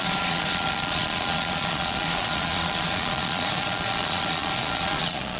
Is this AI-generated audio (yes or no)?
yes